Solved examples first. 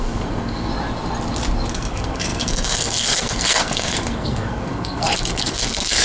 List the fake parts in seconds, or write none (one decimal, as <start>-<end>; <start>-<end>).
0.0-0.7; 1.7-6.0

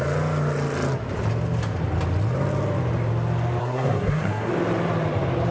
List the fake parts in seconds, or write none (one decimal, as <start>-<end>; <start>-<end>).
3.6-4.5

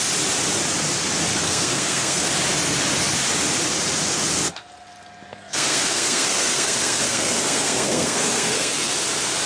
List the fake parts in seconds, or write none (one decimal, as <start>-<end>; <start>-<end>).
1.3-2.3; 5.3-8.9

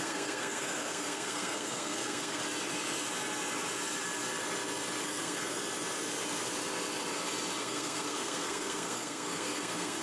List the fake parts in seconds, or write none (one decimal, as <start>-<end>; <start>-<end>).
0.0-2.4; 5.0-5.6; 7.6-10.0

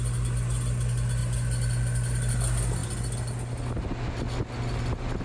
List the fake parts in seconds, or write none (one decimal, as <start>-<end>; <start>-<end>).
none

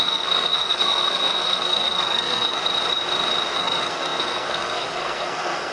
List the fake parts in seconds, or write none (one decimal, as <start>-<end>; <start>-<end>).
0.0-2.6; 3.5-5.7